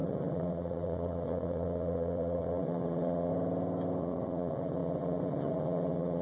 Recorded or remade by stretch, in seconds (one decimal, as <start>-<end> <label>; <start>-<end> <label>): 0.0-3.3 remade; 3.3-4.0 recorded; 4.0-6.2 remade